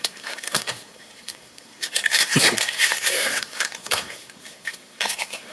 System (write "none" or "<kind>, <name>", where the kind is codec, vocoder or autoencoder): codec, SNAC